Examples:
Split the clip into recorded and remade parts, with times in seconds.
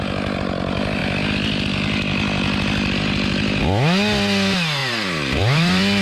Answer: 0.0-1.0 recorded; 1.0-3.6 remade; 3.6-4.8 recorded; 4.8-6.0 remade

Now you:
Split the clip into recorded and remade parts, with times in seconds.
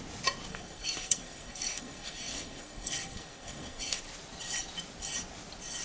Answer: 0.0-0.5 recorded; 0.5-4.0 remade; 4.0-5.8 recorded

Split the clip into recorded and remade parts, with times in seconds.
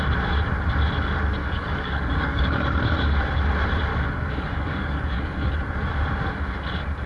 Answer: 0.0-1.4 recorded; 1.4-2.6 remade; 2.6-3.9 recorded; 3.9-5.5 remade; 5.5-7.1 recorded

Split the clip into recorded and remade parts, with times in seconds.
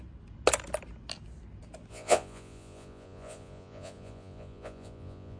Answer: 0.0-1.9 recorded; 1.9-5.4 remade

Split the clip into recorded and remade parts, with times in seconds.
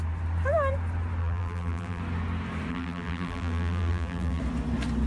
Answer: 0.0-1.2 recorded; 1.2-2.0 remade; 2.0-2.7 recorded; 2.7-4.4 remade; 4.4-5.1 recorded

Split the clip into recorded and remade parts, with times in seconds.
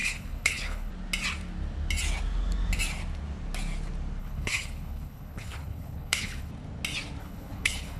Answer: 0.0-0.9 remade; 0.9-4.2 recorded; 4.2-6.5 remade; 6.5-7.2 recorded; 7.2-8.0 remade